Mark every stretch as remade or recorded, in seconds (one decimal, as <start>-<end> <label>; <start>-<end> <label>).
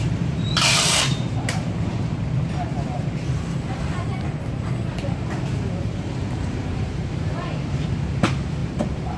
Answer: 0.0-4.1 remade; 4.1-4.9 recorded; 4.9-9.2 remade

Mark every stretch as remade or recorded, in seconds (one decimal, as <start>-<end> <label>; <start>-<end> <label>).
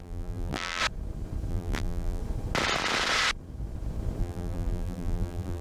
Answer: 0.0-0.8 remade; 0.8-1.5 recorded; 1.5-2.2 remade; 2.2-4.2 recorded; 4.2-5.6 remade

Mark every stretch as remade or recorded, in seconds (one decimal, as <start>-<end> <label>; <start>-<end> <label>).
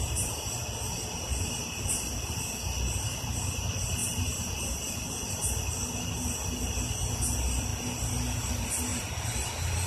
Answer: 0.0-4.0 recorded; 4.0-5.3 remade; 5.3-8.9 recorded; 8.9-9.5 remade; 9.5-9.9 recorded